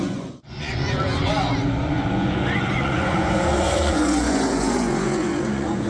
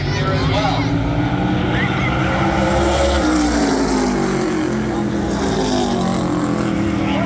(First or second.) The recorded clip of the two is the second